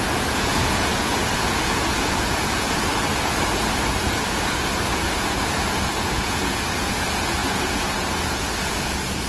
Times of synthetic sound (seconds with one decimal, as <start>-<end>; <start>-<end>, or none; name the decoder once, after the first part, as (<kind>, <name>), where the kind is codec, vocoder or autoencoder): 0.0-9.3 (vocoder, Vocos)